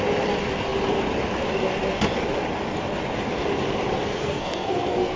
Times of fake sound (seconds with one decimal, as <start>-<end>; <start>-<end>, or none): 4.2-5.2